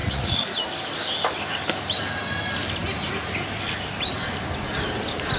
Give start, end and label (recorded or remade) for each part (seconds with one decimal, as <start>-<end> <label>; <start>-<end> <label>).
0.0-0.6 remade; 0.6-5.4 recorded